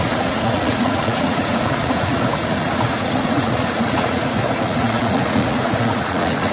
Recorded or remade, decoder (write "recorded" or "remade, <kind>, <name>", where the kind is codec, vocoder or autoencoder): remade, vocoder, Vocos